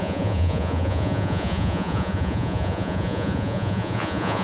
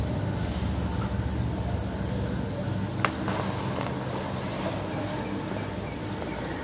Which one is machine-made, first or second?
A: first